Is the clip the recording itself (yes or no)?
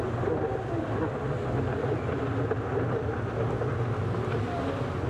yes